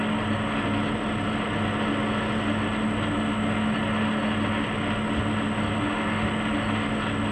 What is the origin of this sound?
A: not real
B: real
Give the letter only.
B